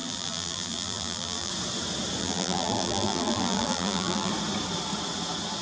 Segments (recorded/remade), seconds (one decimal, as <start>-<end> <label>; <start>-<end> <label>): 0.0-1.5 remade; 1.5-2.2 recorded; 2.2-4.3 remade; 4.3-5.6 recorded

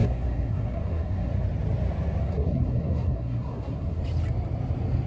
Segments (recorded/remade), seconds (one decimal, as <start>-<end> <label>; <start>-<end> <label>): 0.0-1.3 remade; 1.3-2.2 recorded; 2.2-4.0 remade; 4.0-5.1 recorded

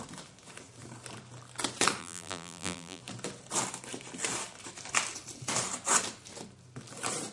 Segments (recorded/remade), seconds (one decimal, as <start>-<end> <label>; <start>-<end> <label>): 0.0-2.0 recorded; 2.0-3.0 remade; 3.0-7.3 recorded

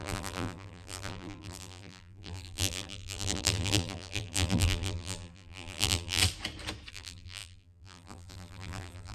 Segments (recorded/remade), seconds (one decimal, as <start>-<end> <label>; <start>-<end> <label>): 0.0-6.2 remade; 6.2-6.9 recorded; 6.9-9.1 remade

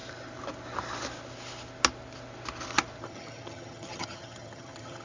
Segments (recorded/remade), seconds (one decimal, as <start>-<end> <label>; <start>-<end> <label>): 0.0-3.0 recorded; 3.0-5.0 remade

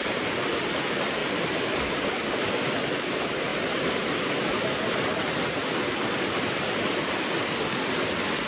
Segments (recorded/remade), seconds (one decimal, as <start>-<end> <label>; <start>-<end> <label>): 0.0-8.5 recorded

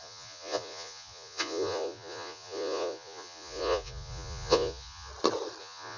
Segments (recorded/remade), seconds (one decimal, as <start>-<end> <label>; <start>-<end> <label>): 0.0-5.1 remade; 5.1-5.6 recorded; 5.6-6.0 remade